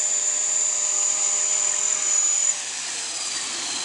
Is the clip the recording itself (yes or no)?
no